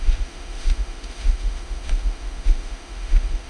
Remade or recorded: remade